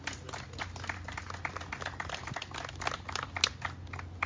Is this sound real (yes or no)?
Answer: yes